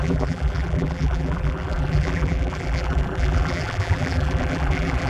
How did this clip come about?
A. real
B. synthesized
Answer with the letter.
B